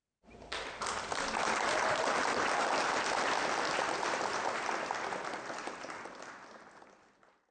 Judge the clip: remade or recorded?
recorded